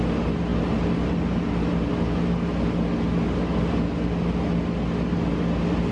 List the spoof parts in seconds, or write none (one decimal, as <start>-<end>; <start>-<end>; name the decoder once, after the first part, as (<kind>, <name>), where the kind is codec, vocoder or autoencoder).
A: none